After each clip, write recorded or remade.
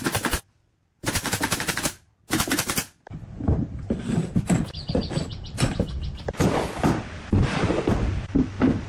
recorded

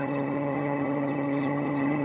remade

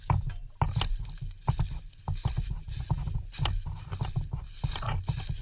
recorded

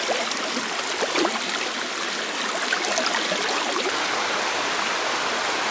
recorded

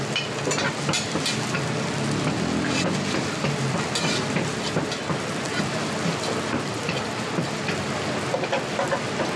recorded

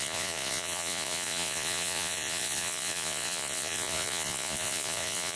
remade